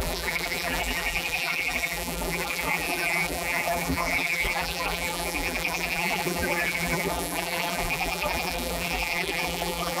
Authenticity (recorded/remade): remade